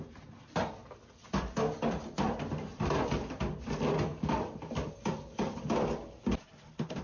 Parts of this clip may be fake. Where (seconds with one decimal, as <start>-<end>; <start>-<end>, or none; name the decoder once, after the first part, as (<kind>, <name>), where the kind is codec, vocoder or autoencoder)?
0.0-7.0 (vocoder, BigVGAN v2)